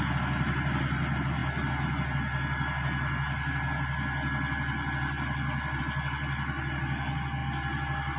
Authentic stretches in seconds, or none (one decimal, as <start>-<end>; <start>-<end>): 0.0-8.2